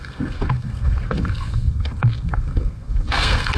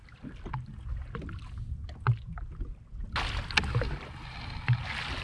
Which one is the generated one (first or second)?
first